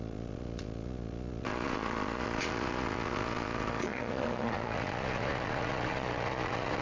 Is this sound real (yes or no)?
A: no